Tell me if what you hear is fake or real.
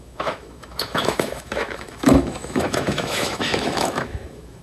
fake